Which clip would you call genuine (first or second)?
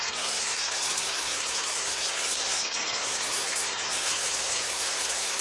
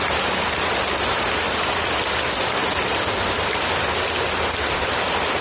second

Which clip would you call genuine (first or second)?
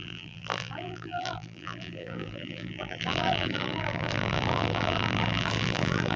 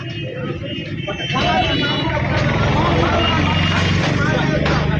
second